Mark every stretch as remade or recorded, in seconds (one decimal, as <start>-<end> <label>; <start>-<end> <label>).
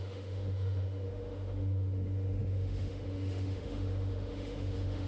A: 0.0-5.1 remade